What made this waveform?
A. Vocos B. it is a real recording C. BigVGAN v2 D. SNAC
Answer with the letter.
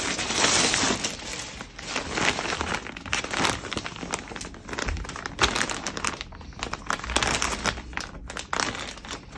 B